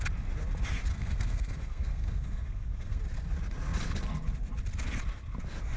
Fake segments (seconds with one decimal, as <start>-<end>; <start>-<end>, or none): 0.9-3.0